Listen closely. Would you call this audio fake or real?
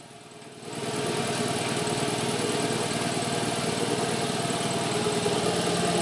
real